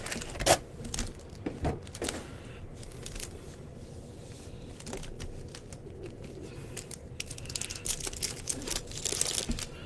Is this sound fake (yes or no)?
no